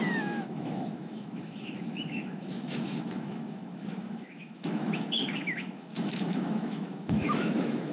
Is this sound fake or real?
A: fake